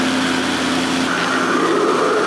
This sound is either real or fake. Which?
real